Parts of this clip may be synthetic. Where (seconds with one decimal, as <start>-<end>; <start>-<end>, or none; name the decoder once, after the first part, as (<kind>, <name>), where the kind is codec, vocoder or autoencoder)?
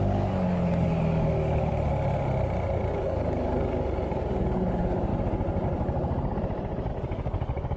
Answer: 0.0-1.7 (codec, DAC); 2.9-5.1; 6.9-7.8